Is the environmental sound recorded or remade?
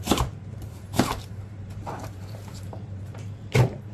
remade